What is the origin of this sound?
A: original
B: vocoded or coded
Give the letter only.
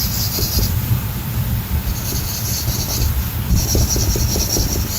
B